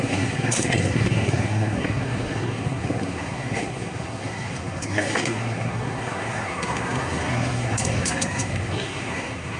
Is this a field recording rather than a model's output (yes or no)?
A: no